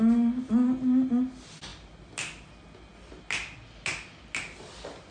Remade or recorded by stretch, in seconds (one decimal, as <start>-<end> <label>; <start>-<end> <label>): 0.0-5.1 recorded